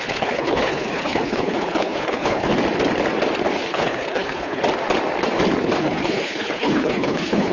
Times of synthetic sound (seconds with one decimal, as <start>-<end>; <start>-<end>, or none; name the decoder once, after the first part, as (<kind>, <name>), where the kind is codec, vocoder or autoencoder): 0.0-2.5 (codec, HILCodec); 3.7-4.6; 5.8-7.5